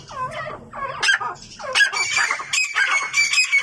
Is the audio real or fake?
fake